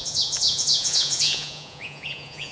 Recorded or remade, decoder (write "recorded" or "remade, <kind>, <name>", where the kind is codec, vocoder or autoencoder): remade, vocoder, Vocos